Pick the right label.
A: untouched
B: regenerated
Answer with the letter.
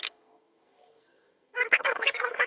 B